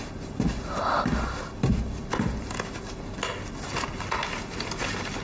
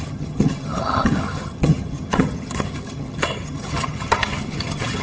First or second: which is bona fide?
first